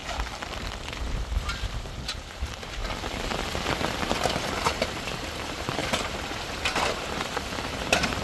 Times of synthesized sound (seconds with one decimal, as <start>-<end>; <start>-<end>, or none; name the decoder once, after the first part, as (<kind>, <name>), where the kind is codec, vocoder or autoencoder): 0.9-2.8 (vocoder, BigVGAN v2); 4.4-8.2